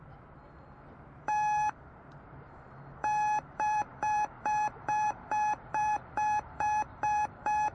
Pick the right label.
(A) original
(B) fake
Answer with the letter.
B